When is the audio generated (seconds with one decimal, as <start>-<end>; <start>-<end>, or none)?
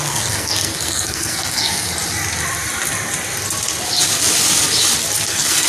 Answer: 0.0-1.9; 5.3-5.7